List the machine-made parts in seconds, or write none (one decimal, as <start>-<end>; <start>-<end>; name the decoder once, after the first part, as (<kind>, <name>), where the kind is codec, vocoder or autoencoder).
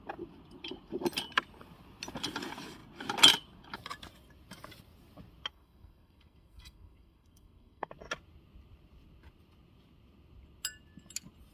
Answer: 5.5-7.9 (codec, SNAC)